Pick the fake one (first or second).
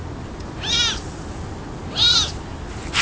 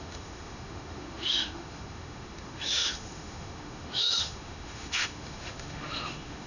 second